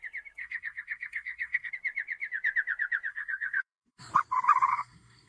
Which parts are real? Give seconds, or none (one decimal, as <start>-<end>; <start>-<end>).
0.0-0.4; 1.7-3.1; 4.1-4.7